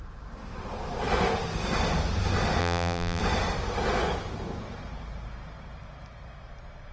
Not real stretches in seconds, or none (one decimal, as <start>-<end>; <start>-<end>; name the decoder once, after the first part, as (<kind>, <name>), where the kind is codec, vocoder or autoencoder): 2.6-3.2 (vocoder, BigVGAN v2)